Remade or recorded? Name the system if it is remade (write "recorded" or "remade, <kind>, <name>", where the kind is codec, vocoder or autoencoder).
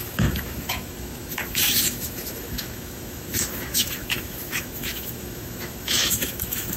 remade, autoencoder, DAC-VAE